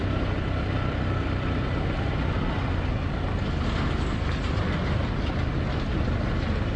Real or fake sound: real